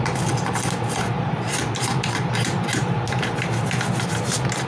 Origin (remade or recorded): recorded